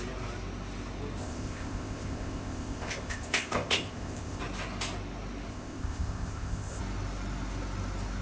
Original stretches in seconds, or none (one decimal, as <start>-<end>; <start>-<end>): 0.0-1.2; 4.4-5.5; 6.8-8.2